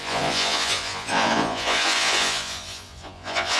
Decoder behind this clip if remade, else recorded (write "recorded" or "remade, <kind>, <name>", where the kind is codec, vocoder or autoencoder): remade, vocoder, Vocos